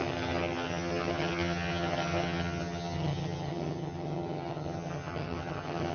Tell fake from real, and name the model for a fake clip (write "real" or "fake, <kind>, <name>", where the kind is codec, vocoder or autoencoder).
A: fake, vocoder, HiFi-GAN